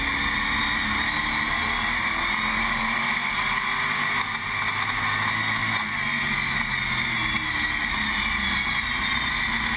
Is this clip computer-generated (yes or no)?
no